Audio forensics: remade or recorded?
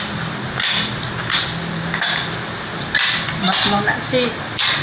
recorded